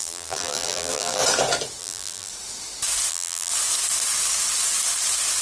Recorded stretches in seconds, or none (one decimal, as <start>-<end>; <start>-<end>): 1.2-1.8; 2.3-3.1; 3.5-5.4